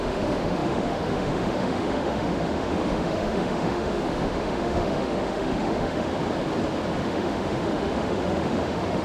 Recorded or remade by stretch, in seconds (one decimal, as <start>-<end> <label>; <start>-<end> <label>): 0.0-6.1 remade; 6.1-7.0 recorded; 7.0-9.0 remade